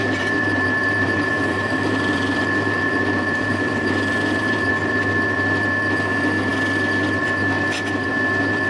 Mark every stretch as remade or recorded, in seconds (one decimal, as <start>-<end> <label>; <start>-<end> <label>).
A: 0.0-4.7 remade; 4.7-8.7 recorded